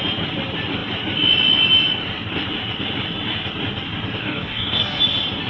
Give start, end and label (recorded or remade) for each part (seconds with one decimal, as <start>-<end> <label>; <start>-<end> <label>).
0.0-4.2 recorded; 4.2-5.0 remade; 5.0-5.5 recorded